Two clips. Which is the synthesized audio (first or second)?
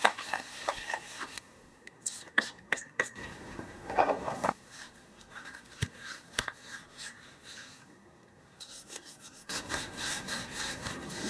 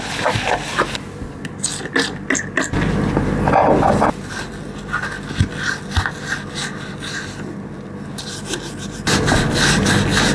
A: first